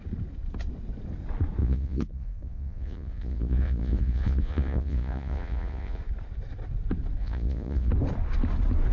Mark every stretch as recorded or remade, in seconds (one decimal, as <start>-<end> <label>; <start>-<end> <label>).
0.0-1.6 recorded; 1.6-6.0 remade; 6.0-7.2 recorded; 7.2-7.9 remade; 7.9-8.9 recorded